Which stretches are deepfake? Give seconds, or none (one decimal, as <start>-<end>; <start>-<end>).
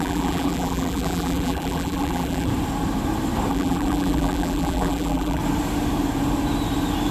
0.0-2.5; 3.5-5.4